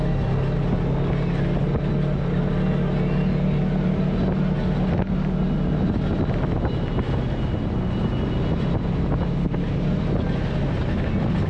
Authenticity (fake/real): real